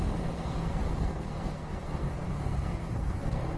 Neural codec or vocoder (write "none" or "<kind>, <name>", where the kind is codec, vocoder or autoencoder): codec, SNAC